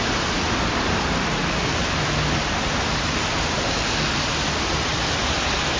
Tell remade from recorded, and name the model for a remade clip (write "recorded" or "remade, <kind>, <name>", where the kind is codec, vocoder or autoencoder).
recorded